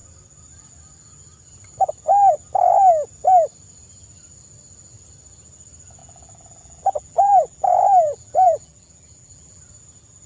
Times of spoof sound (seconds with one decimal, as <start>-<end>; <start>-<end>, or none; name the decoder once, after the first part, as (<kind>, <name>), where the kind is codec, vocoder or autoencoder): 6.0-9.6 (vocoder, BigVGAN v2)